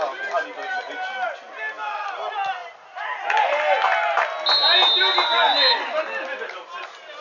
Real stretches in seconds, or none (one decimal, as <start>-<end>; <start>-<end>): 0.0-2.6; 3.2-7.2